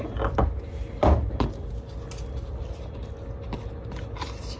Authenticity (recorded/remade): recorded